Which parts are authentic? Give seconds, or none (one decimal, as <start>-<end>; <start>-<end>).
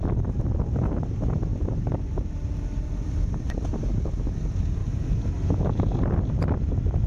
0.0-1.5; 3.8-4.8; 6.0-7.1